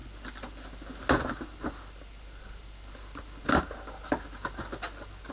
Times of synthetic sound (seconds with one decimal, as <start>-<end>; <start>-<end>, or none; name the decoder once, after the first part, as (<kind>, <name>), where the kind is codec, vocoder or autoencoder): none